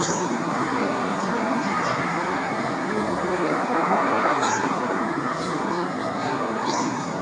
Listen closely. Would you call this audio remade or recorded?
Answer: remade